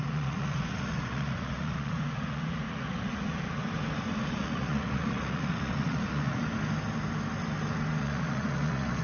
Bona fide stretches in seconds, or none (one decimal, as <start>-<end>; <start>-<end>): 3.6-4.3; 6.4-8.0